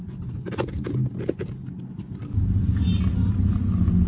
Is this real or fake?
real